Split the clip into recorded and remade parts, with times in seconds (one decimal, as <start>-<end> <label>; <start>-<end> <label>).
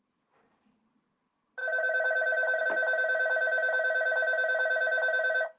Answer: 0.0-1.6 recorded; 1.6-2.6 remade; 2.6-5.6 recorded